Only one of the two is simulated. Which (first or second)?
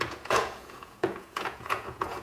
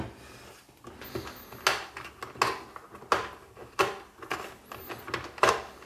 first